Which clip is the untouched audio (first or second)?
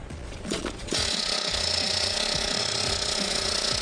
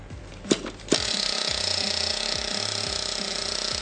second